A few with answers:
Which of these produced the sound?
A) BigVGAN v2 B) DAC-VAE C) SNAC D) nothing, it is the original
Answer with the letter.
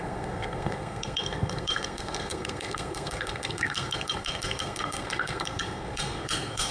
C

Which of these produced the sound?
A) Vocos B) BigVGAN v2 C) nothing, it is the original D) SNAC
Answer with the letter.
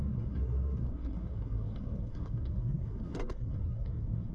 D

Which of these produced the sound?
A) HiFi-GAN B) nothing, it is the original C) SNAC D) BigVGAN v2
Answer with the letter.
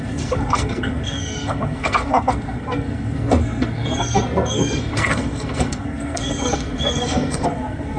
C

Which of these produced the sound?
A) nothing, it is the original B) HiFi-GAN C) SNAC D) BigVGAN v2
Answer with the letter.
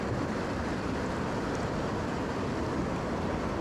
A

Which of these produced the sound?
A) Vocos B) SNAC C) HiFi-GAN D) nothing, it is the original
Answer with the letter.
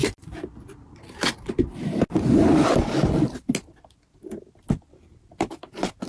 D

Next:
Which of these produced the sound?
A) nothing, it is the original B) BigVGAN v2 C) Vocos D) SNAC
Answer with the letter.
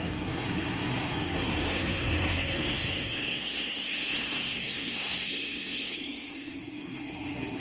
D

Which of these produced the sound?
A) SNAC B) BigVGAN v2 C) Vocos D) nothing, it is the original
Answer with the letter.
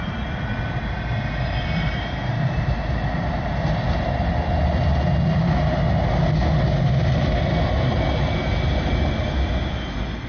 D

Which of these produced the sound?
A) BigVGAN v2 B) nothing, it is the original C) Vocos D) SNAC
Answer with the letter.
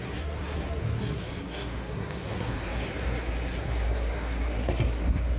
D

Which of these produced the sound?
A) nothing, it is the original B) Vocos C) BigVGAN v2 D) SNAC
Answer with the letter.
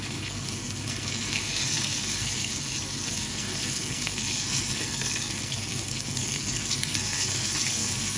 D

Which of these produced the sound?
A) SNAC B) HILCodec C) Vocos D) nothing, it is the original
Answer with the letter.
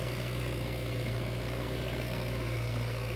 A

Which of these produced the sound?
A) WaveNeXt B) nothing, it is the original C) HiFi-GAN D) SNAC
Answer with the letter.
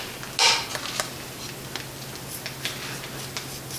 B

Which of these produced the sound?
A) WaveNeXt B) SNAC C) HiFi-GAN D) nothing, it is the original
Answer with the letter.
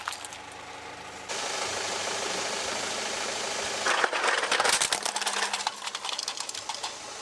D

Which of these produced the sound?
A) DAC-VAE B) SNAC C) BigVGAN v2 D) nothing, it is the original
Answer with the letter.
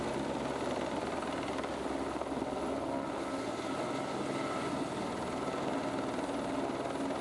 D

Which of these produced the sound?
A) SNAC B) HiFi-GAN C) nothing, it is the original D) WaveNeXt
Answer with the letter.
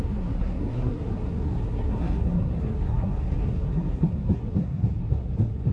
A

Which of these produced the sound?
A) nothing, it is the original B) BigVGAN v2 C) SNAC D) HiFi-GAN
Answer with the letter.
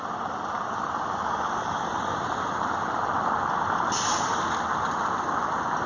A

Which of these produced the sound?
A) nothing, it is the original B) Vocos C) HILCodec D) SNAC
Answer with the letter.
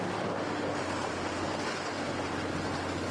A